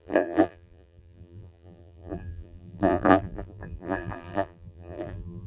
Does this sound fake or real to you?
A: fake